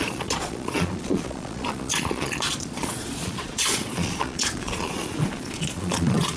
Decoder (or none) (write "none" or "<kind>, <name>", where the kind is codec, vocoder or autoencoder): vocoder, Vocos